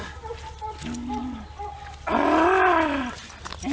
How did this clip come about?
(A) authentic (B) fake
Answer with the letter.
A